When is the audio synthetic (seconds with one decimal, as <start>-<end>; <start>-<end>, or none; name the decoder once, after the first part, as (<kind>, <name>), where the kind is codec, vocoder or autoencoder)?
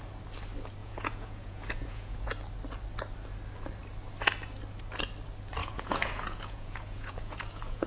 0.8-2.3 (vocoder, Vocos); 5.6-7.9